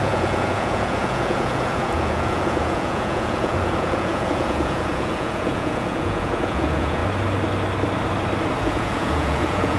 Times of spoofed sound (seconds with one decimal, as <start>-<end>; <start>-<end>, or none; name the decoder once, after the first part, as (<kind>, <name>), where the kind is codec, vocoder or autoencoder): 0.0-7.0 (vocoder, Vocos); 8.6-9.8